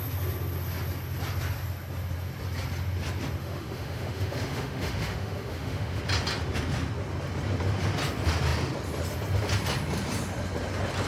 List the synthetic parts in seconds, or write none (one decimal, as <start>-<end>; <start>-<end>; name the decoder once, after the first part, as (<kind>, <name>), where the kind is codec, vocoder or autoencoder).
3.4-6.0 (autoencoder, DAC-VAE)